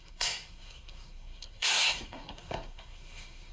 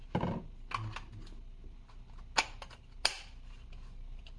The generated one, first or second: first